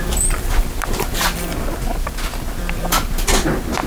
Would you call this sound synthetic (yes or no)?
yes